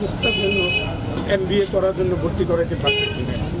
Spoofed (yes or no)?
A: no